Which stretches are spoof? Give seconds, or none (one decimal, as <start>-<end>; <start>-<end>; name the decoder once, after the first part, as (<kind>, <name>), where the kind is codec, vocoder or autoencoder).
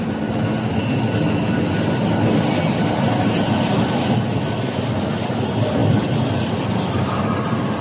none